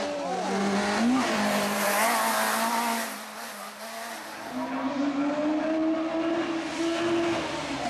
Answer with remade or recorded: recorded